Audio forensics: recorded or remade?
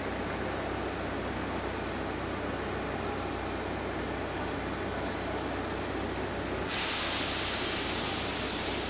recorded